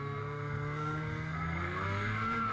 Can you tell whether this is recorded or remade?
remade